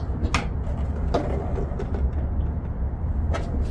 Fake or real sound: real